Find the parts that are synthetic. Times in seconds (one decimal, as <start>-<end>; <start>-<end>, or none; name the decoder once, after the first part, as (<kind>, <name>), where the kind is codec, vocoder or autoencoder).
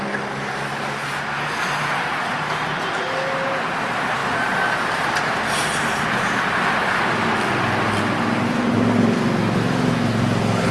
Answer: none